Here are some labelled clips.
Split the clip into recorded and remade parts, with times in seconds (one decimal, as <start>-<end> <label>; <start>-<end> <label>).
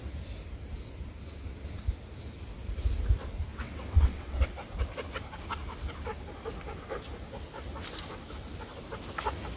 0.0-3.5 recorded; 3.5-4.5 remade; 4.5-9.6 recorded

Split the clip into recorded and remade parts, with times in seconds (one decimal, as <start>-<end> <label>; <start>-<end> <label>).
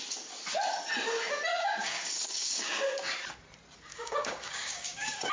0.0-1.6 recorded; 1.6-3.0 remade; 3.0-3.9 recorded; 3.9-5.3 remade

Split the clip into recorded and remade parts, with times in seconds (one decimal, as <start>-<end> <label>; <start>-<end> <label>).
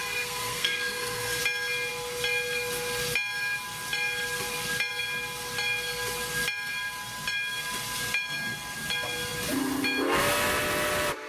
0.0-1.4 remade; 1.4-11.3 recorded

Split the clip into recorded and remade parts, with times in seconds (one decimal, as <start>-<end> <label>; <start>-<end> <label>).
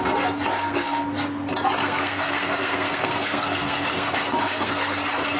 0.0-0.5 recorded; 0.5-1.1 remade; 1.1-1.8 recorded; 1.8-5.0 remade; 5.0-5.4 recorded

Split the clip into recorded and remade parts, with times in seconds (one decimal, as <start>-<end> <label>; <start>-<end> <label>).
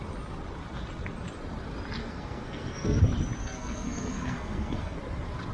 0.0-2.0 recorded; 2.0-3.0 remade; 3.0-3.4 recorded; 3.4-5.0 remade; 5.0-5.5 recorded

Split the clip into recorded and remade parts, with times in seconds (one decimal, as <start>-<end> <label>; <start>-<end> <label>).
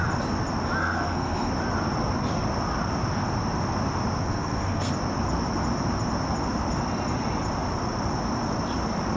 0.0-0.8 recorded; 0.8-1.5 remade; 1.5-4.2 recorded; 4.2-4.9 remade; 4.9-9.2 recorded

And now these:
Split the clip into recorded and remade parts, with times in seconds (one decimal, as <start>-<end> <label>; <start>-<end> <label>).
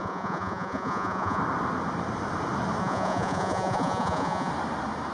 0.0-1.4 remade; 1.4-2.8 recorded; 2.8-4.5 remade; 4.5-5.1 recorded